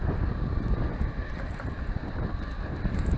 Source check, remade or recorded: recorded